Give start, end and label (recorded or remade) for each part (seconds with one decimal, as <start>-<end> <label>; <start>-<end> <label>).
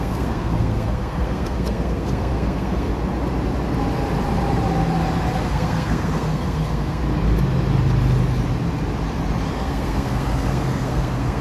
0.0-2.9 remade; 2.9-5.4 recorded; 5.4-7.0 remade; 7.0-9.5 recorded; 9.5-11.4 remade